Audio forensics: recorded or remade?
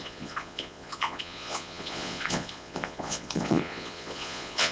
remade